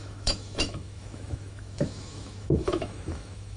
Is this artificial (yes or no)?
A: yes